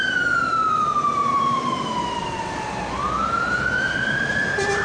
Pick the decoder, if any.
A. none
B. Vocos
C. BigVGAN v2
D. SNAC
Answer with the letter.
C